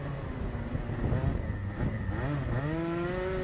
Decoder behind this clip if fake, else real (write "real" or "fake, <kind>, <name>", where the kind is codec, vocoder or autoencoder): real